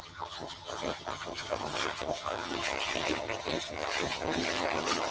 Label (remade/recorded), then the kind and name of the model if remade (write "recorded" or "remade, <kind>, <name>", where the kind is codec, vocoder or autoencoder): remade, vocoder, HiFi-GAN